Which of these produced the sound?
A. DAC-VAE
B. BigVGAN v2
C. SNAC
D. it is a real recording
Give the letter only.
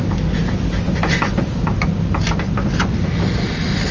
D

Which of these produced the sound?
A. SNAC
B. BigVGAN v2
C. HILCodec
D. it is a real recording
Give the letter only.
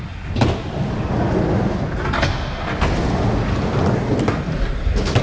D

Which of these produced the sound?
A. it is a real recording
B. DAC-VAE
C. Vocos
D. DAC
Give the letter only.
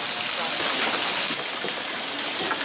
A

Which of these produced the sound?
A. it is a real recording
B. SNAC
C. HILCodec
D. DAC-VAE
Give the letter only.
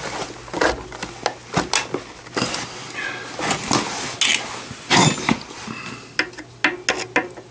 A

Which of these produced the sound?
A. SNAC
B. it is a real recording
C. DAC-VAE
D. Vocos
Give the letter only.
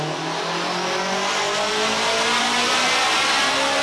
B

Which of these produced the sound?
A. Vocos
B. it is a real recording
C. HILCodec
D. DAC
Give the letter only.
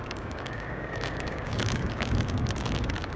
D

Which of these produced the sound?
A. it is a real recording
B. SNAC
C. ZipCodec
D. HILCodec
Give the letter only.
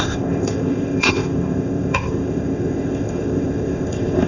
C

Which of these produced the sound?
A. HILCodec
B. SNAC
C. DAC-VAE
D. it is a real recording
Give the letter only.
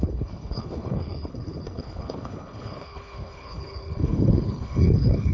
A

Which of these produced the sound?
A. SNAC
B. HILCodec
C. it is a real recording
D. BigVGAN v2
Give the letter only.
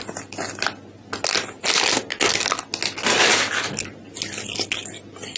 C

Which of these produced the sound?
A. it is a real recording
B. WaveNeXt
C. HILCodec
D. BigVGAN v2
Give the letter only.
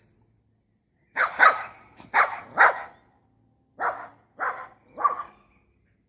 A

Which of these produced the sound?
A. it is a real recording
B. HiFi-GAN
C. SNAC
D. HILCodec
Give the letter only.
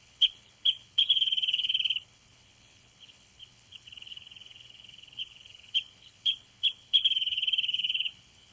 D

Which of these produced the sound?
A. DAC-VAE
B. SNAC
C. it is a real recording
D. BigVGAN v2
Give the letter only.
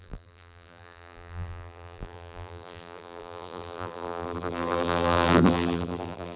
D